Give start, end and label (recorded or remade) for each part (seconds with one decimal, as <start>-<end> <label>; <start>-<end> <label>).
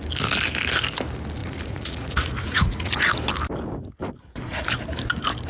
0.0-1.4 recorded; 1.4-3.1 remade; 3.1-4.0 recorded; 4.0-4.6 remade; 4.6-5.5 recorded